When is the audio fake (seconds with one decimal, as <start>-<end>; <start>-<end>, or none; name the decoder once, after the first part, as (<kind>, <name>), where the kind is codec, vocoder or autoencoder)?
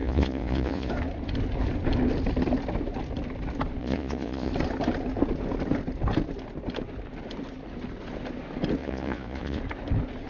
0.0-0.9 (vocoder, Vocos); 3.8-4.5; 8.8-9.6